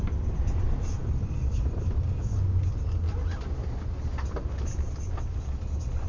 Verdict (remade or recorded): recorded